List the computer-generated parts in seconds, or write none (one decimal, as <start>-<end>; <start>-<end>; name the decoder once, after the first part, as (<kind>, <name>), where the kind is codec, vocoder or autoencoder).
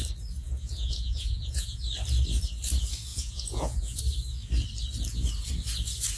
0.4-1.8 (vocoder, Vocos); 3.1-4.0